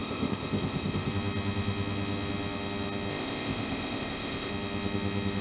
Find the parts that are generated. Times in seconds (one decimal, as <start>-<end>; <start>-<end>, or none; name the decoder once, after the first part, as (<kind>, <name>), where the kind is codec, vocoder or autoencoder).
0.0-1.1 (codec, ZipCodec); 3.1-4.5